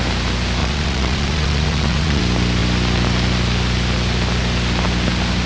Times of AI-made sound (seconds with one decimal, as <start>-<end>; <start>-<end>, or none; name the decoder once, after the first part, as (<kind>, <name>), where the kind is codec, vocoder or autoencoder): 0.6-2.2 (vocoder, Vocos)